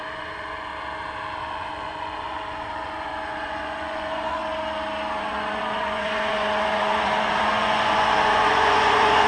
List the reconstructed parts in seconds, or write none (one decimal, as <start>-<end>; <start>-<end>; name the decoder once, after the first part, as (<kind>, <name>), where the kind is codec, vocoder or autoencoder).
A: 0.0-0.7 (vocoder, Vocos); 1.4-4.4; 5.2-9.3